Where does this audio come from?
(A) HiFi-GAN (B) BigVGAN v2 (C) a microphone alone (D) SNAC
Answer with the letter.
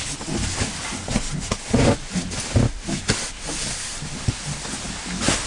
C